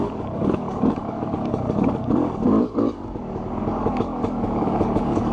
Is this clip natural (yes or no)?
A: no